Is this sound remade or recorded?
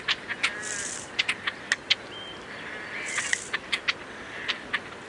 recorded